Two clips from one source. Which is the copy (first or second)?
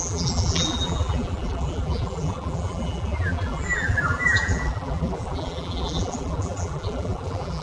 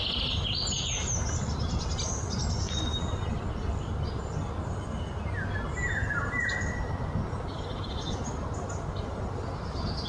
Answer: first